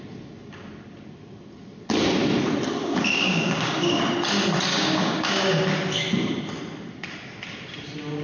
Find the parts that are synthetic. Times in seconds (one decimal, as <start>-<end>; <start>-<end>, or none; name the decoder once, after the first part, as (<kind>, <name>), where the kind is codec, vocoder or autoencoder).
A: 2.8-4.0 (codec, DAC); 4.7-5.6